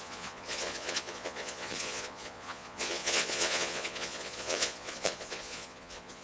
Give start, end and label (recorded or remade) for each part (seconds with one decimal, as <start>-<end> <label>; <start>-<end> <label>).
0.0-6.2 remade